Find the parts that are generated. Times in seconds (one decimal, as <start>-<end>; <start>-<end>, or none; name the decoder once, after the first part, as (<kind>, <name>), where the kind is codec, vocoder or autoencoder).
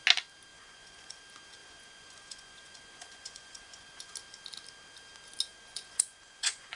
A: 0.5-1.2 (vocoder, Vocos); 1.6-4.1; 5.5-6.8